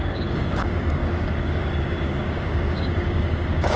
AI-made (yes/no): yes